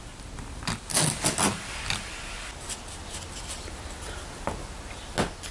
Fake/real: real